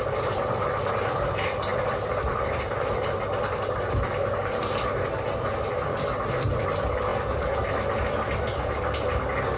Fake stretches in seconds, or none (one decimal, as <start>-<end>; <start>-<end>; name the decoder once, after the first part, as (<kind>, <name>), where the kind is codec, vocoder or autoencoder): none